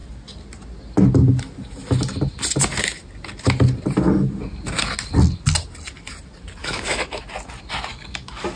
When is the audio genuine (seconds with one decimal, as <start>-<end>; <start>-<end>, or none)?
0.0-6.6; 7.2-7.9